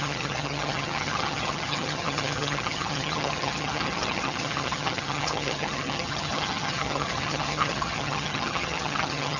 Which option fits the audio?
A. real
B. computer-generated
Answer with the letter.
B